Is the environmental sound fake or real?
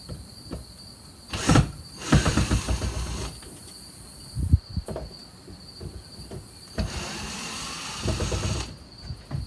fake